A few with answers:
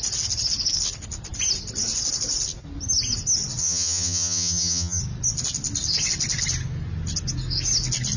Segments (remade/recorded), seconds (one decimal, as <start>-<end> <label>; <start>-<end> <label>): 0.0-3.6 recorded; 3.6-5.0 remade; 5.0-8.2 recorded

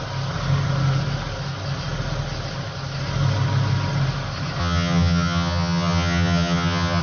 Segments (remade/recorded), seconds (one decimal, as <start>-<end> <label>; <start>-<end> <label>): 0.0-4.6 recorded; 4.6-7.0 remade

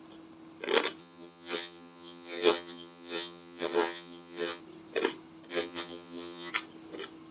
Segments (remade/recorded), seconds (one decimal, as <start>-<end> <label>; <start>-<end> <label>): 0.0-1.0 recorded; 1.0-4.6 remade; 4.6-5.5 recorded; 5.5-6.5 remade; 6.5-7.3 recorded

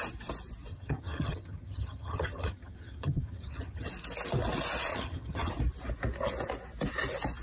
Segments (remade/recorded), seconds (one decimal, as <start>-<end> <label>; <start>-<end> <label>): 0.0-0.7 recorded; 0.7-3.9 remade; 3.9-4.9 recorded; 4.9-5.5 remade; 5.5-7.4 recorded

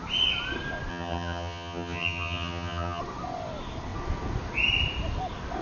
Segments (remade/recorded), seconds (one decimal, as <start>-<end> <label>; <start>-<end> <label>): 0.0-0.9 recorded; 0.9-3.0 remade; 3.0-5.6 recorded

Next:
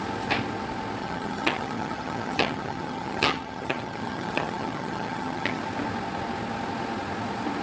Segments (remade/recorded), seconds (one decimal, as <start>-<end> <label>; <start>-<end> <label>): 0.0-1.0 recorded; 1.0-5.6 remade; 5.6-7.6 recorded

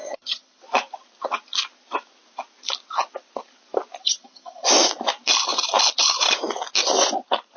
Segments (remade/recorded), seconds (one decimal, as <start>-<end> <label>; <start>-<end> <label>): 0.0-0.6 remade; 0.6-4.0 recorded; 4.0-4.7 remade; 4.7-7.6 recorded